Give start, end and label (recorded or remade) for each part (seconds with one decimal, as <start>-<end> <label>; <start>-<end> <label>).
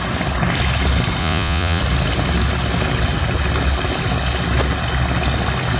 0.0-1.2 recorded; 1.2-1.8 remade; 1.8-5.8 recorded